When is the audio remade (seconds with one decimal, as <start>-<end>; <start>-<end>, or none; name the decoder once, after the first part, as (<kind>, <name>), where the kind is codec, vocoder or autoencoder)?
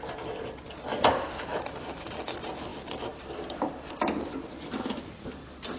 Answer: 0.9-1.7 (vocoder, BigVGAN v2)